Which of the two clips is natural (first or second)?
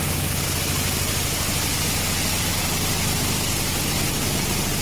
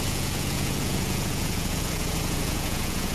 first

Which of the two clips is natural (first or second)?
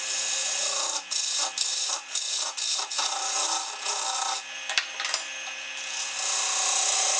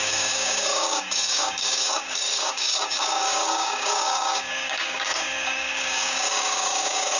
first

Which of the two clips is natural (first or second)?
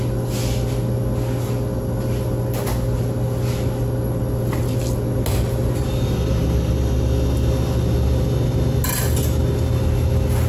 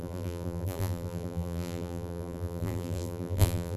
first